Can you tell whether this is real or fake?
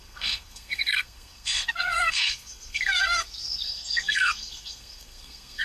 fake